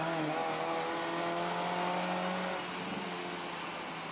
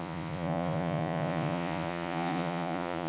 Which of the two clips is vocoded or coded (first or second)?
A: second